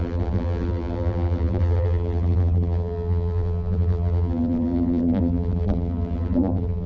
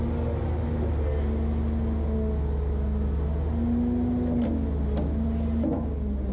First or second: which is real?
second